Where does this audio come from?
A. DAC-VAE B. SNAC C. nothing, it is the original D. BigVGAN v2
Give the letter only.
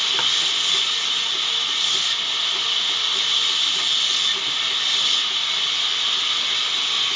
C